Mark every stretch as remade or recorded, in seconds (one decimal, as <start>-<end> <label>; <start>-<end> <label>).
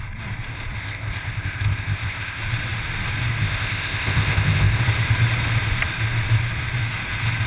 0.0-0.8 recorded; 0.8-2.4 remade; 2.4-3.4 recorded; 3.4-4.8 remade; 4.8-7.5 recorded